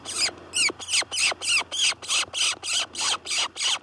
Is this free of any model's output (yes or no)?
yes